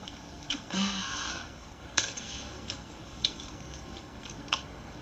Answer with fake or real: fake